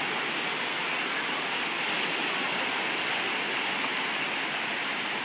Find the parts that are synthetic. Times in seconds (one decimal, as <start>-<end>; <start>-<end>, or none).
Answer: none